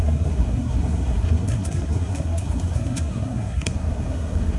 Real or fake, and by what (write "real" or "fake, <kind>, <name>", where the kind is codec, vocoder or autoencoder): fake, codec, SNAC